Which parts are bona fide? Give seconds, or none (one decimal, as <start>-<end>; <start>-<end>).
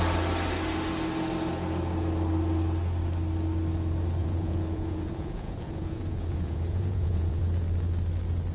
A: 0.0-4.2; 7.4-8.5